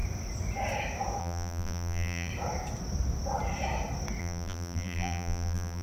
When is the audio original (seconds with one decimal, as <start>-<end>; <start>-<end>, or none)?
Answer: 0.0-1.2; 2.3-4.2